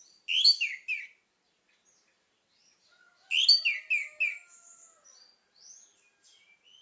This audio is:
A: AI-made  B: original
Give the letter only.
B